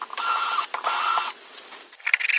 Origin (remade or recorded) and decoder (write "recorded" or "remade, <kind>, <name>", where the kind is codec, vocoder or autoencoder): recorded